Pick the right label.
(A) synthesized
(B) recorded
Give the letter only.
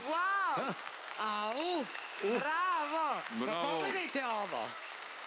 A